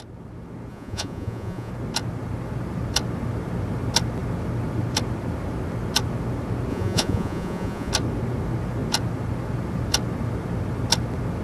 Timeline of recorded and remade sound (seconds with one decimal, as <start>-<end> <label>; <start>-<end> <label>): 0.0-0.7 recorded; 0.7-1.7 remade; 1.7-6.7 recorded; 6.7-7.9 remade; 7.9-11.4 recorded

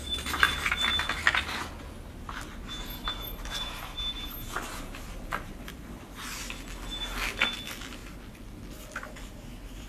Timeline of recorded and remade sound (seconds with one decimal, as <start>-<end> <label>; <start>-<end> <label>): 0.0-9.9 recorded